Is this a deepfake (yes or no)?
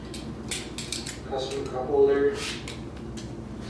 no